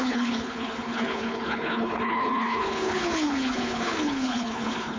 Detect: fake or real fake